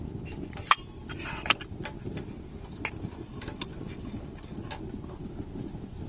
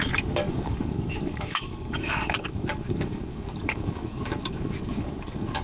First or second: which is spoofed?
second